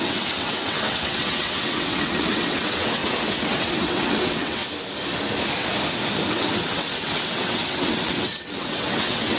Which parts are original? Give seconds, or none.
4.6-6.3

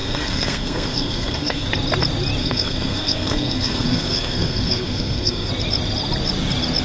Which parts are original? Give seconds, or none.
1.7-2.4; 5.5-6.8

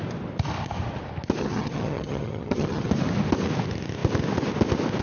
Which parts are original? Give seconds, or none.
0.0-1.4; 2.9-5.0

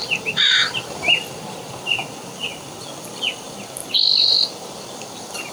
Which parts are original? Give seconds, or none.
0.0-5.5